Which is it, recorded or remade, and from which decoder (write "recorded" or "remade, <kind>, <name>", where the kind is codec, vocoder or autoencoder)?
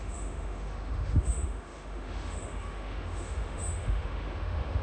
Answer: remade, autoencoder, DAC-VAE